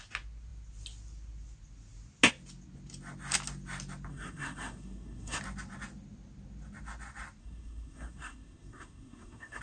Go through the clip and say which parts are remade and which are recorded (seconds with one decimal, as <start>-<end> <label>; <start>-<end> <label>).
0.0-4.1 recorded; 4.1-5.4 remade; 5.4-7.4 recorded; 7.4-9.6 remade